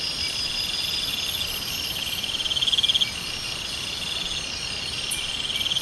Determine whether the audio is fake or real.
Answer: real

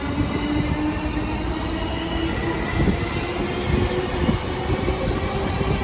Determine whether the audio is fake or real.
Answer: real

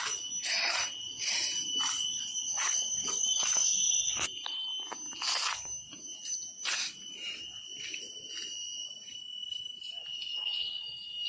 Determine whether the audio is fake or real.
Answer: fake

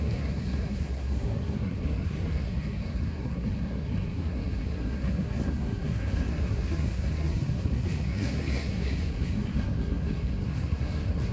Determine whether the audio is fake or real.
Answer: fake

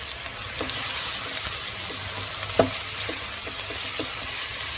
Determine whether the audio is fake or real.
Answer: real